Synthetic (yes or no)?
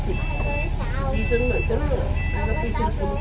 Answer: no